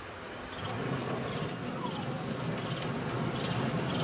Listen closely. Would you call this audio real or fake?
real